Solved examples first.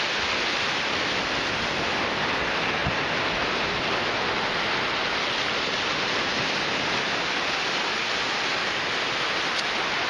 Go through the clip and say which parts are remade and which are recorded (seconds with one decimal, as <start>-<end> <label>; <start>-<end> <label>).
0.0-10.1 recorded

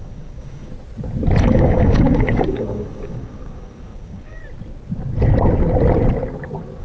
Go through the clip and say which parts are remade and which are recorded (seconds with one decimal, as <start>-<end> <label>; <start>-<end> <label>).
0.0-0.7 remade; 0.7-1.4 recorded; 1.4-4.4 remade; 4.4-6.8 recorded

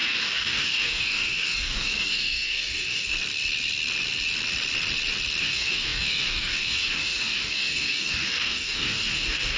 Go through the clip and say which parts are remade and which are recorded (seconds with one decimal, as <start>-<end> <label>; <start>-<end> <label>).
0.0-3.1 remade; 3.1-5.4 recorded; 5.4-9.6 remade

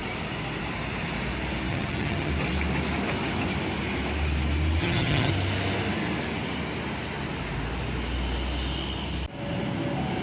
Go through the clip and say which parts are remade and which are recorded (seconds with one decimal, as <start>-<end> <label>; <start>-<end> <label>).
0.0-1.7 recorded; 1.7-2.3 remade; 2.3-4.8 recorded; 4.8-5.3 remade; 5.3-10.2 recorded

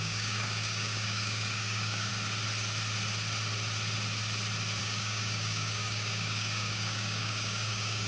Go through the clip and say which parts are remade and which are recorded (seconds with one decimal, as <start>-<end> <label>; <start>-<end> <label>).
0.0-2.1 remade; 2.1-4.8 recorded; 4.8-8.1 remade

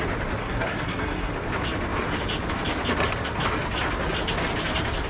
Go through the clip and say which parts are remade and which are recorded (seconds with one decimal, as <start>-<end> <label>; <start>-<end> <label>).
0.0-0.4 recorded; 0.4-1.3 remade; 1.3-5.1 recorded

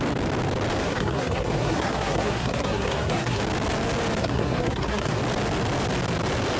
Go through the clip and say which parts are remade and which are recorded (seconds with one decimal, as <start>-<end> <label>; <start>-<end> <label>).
0.0-0.8 recorded; 0.8-3.4 remade; 3.4-4.2 recorded; 4.2-5.2 remade; 5.2-6.6 recorded